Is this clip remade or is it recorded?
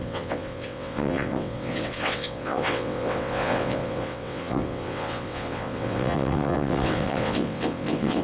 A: remade